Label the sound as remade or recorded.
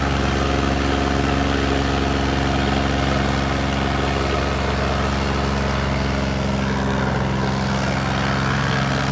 recorded